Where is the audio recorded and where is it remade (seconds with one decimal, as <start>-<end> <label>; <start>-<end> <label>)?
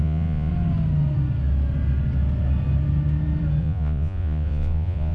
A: 0.0-0.5 remade; 0.5-3.6 recorded; 3.6-5.1 remade